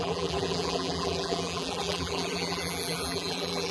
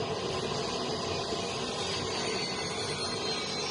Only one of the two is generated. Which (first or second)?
first